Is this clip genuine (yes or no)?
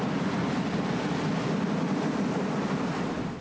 no